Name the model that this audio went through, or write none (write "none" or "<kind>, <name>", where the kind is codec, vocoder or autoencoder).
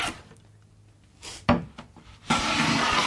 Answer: none